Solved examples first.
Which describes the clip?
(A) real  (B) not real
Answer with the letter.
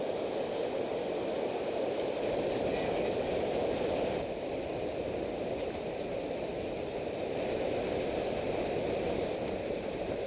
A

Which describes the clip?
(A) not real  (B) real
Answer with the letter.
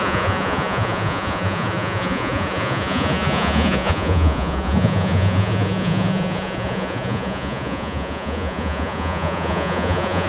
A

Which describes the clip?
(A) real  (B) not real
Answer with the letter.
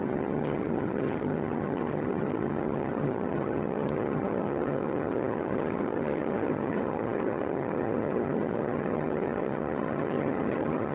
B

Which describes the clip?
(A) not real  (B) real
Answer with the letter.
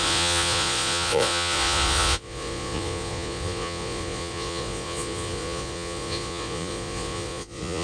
A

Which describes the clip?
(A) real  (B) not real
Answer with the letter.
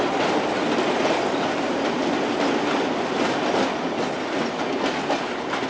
A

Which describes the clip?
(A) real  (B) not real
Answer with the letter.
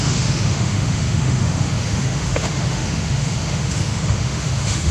B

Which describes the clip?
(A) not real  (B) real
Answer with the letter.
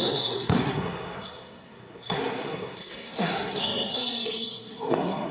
A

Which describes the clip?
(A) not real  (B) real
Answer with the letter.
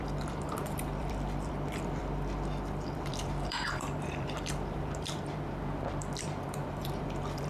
A